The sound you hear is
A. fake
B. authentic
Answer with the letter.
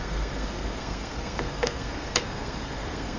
A